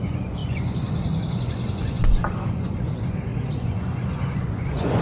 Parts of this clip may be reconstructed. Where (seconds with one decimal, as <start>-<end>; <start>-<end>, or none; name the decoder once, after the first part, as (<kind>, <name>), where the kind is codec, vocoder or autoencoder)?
0.0-5.0 (vocoder, Vocos)